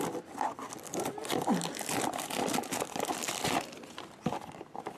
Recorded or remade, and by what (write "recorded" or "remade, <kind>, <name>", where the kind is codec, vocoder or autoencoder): recorded